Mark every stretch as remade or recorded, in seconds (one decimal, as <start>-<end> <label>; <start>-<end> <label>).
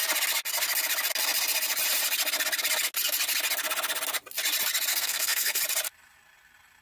0.0-4.9 recorded; 4.9-5.6 remade; 5.6-6.8 recorded